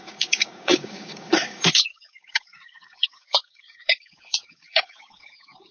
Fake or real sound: fake